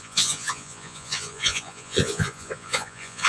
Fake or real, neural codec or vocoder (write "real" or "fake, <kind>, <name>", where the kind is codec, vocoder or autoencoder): fake, vocoder, Vocos